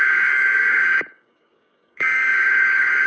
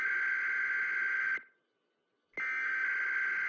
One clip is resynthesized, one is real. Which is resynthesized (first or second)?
first